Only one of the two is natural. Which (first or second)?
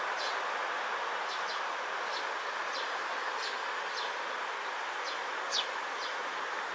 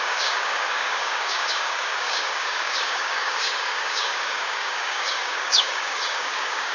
first